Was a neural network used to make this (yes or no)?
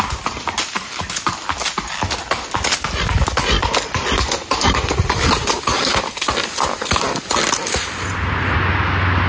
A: no